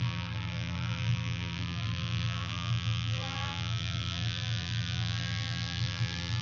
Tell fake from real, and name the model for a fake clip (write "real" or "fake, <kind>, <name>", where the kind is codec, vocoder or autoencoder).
fake, vocoder, BigVGAN v2